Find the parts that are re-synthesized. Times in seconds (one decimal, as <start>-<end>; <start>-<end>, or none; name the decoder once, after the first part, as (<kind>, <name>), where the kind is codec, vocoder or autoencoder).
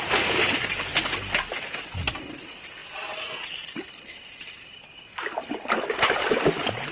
none